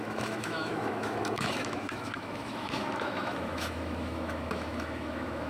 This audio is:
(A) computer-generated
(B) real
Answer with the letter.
A